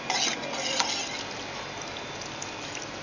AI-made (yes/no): no